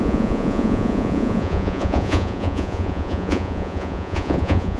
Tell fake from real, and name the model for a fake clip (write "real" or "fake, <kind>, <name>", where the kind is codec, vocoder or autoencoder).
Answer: fake, vocoder, Vocos